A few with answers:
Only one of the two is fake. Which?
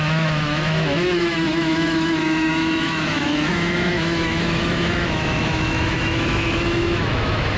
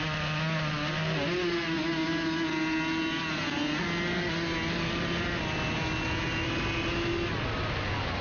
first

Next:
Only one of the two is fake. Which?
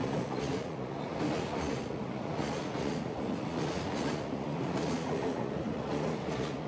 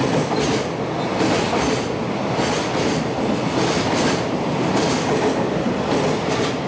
first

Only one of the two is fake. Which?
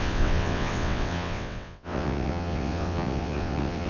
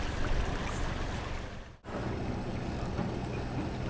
first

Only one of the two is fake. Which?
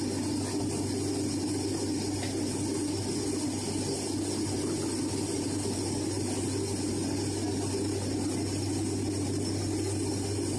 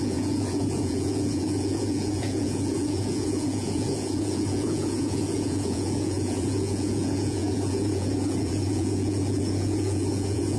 second